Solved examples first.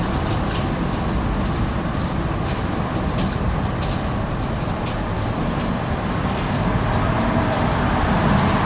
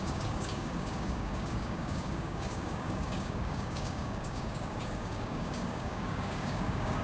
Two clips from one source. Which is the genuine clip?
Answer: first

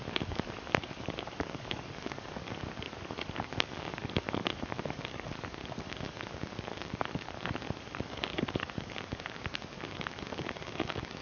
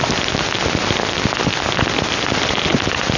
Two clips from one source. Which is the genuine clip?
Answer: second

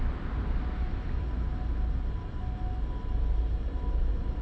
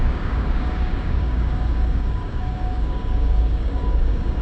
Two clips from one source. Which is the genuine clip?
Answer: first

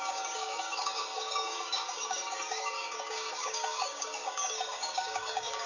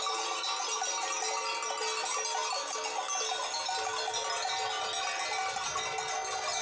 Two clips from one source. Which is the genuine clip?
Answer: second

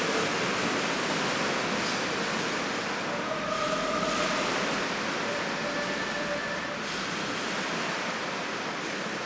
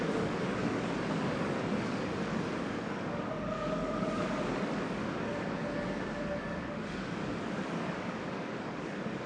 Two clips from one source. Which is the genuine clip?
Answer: first